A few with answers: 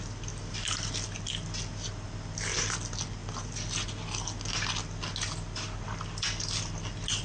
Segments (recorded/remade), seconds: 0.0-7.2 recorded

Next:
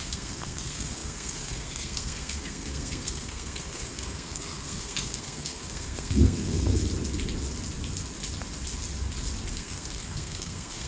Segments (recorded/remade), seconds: 0.0-6.8 remade; 6.8-9.5 recorded; 9.5-10.9 remade

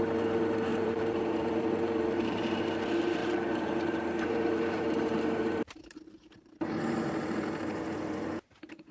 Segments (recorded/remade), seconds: 0.0-0.7 recorded; 0.7-2.6 remade; 2.6-3.2 recorded; 3.2-6.6 remade; 6.6-8.9 recorded

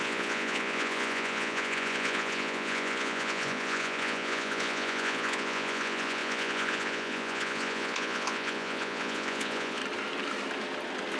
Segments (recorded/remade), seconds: 0.0-9.8 remade; 9.8-11.2 recorded

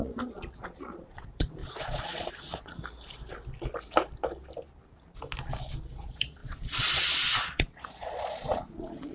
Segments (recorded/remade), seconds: 0.0-2.8 remade; 2.8-5.9 recorded; 5.9-9.1 remade